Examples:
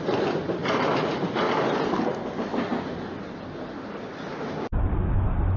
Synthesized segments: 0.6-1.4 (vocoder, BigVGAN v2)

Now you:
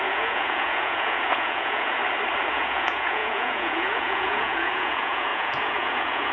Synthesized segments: 0.0-2.0 (vocoder, Vocos); 2.5-6.3